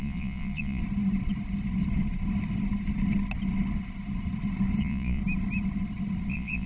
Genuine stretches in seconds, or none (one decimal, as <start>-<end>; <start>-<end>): 0.8-4.8; 5.2-6.3